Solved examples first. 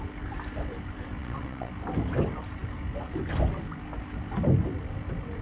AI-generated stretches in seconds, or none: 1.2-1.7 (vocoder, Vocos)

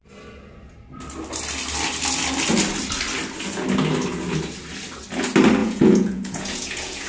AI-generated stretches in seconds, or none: 5.6-7.1 (vocoder, Vocos)

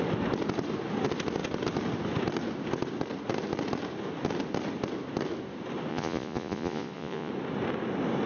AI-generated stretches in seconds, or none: 5.9-7.3 (vocoder, Vocos)

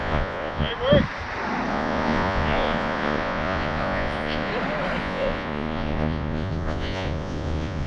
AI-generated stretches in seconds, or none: 0.0-0.7 (vocoder, Vocos); 1.7-4.5; 5.0-7.9

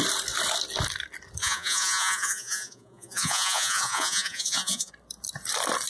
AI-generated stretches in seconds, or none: 1.4-4.9 (vocoder, Vocos)

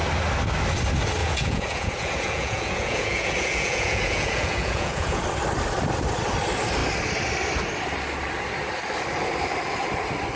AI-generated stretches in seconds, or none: 1.2-5.2 (vocoder, Vocos)

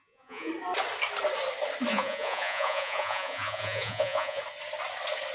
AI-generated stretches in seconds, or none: 0.0-0.5 (vocoder, Vocos); 1.9-4.4